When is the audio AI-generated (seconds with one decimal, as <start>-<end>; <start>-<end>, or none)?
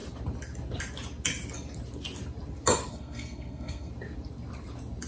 2.9-3.9